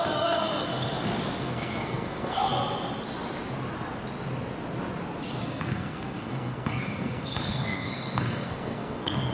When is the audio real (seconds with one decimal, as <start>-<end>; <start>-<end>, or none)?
0.7-1.4; 2.5-5.4